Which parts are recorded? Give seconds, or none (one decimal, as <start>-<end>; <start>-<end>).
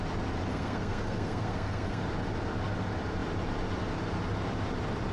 0.0-0.5; 2.0-5.1